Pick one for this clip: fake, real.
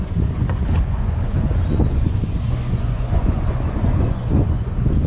fake